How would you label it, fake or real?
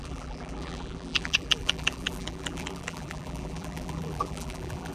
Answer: fake